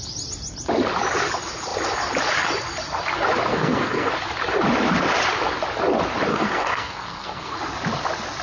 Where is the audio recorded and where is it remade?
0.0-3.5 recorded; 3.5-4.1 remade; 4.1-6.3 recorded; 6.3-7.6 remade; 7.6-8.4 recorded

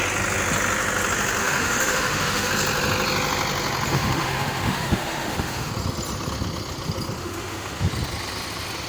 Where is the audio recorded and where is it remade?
0.0-1.4 recorded; 1.4-2.5 remade; 2.5-3.9 recorded; 3.9-5.7 remade; 5.7-7.2 recorded; 7.2-7.9 remade; 7.9-8.9 recorded

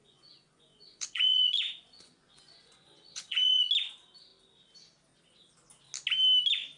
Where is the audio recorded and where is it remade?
0.0-3.6 remade; 3.6-6.8 recorded

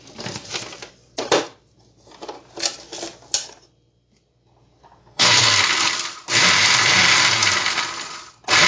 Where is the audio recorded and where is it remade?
0.0-5.0 recorded; 5.0-5.7 remade; 5.7-8.7 recorded

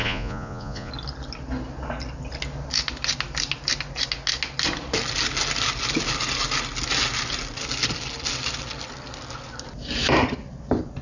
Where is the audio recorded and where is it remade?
0.0-0.9 remade; 0.9-11.0 recorded

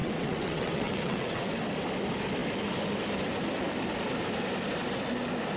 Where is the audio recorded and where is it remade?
0.0-1.5 remade; 1.5-5.6 recorded